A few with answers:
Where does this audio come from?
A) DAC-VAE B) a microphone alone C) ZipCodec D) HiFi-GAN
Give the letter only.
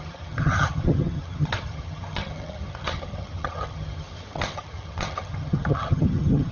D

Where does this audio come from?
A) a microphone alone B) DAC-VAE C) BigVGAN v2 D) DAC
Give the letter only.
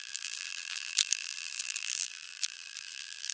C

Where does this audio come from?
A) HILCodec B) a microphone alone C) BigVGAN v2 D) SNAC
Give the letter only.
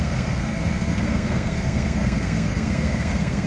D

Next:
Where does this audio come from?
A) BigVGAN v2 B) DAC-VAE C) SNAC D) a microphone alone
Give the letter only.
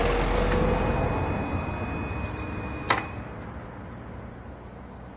D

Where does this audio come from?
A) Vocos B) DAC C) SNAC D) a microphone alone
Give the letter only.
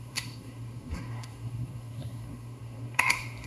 C